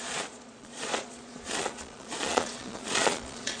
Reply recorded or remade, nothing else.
remade